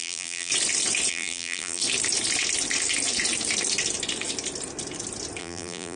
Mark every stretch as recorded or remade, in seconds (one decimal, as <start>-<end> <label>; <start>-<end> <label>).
0.0-0.5 remade; 0.5-1.1 recorded; 1.1-1.8 remade; 1.8-5.4 recorded; 5.4-6.0 remade